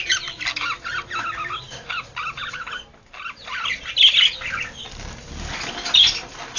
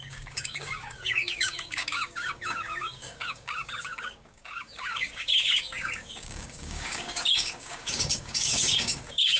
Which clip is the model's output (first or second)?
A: second